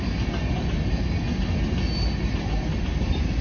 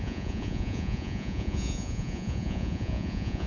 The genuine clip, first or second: first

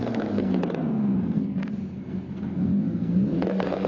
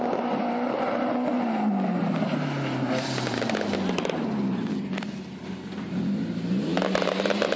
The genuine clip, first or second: second